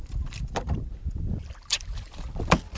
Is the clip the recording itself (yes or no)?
no